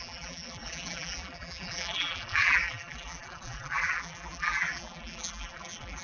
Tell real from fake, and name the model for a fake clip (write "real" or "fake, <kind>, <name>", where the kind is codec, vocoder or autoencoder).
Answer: fake, vocoder, BigVGAN v2